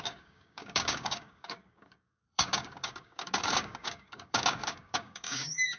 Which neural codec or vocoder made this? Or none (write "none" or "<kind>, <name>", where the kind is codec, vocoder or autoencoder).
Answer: codec, DAC